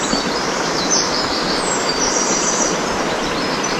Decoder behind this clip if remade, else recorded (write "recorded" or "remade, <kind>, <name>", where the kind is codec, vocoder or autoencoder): remade, vocoder, BigVGAN v2